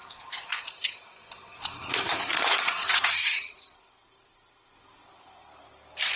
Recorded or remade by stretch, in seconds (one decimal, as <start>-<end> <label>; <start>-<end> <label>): 0.0-3.6 remade; 3.6-6.2 recorded